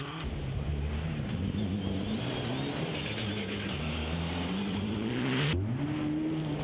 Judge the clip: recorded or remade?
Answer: recorded